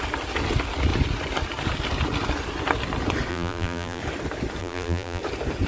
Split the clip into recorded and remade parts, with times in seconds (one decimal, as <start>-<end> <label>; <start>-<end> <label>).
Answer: 0.0-3.3 recorded; 3.3-4.0 remade; 4.0-4.6 recorded; 4.6-5.2 remade; 5.2-5.7 recorded

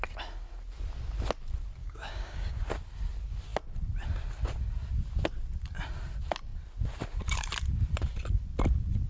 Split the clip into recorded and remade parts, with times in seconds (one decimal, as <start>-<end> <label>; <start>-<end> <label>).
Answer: 0.0-1.8 recorded; 1.8-2.6 remade; 2.6-9.1 recorded

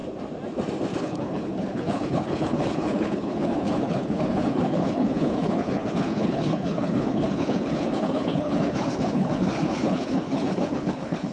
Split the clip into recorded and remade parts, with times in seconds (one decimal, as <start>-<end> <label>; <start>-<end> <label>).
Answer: 0.0-1.0 recorded; 1.0-11.3 remade

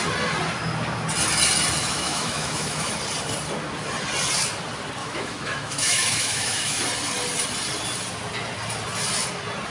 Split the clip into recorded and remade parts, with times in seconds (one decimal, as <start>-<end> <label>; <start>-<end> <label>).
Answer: 0.0-1.8 recorded; 1.8-2.9 remade; 2.9-5.0 recorded; 5.0-6.8 remade; 6.8-9.7 recorded

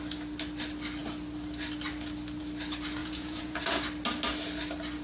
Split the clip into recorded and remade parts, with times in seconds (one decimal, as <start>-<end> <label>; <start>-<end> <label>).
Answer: 0.0-3.0 recorded; 3.0-3.6 remade; 3.6-5.0 recorded